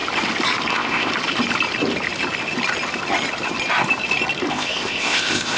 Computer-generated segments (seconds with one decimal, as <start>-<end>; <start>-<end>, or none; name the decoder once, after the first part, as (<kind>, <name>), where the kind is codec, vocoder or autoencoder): 0.7-1.1 (codec, ZipCodec); 4.5-5.6